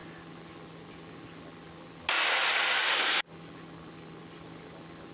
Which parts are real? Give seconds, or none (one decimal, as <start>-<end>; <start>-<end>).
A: 0.0-5.1